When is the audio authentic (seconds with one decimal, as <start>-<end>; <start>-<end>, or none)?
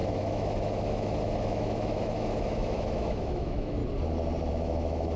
3.8-4.5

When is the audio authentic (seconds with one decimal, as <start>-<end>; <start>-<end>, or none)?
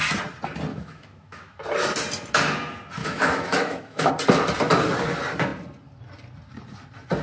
0.0-0.7; 1.6-3.0; 4.1-7.2